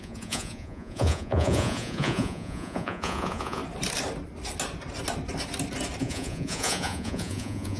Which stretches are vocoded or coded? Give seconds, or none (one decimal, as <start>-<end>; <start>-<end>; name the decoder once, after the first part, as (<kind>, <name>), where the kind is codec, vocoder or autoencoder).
0.0-3.6 (vocoder, Vocos); 6.0-7.8